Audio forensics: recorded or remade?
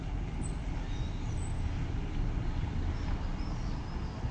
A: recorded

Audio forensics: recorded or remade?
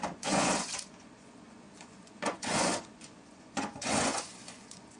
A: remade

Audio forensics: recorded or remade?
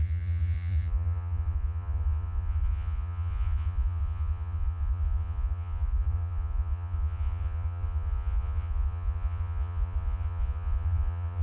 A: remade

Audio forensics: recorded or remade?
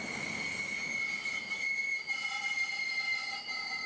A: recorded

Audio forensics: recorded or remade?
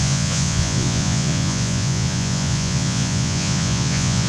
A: remade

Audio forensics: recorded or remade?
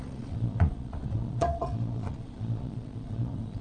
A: remade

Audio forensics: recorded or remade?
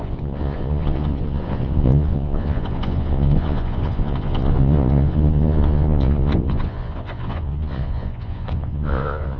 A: remade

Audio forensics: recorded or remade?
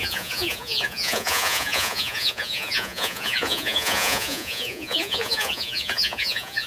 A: remade